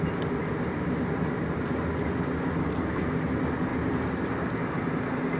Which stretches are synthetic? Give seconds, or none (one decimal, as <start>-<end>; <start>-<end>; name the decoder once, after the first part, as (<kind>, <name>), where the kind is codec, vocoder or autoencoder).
2.6-3.1 (codec, SNAC)